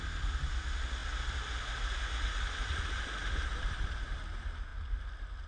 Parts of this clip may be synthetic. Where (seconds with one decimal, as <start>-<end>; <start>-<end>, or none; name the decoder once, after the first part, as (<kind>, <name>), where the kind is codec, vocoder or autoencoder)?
3.2-4.2 (vocoder, BigVGAN v2)